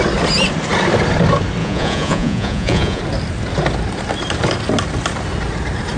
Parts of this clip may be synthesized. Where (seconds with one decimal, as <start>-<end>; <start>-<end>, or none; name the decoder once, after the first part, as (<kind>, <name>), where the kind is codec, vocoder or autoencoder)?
1.6-3.0 (vocoder, Vocos)

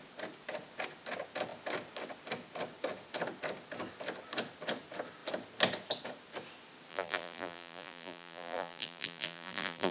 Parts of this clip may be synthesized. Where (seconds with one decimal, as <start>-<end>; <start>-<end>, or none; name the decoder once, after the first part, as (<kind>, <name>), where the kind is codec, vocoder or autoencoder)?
6.9-9.9 (vocoder, BigVGAN v2)